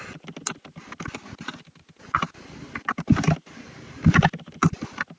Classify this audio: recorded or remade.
recorded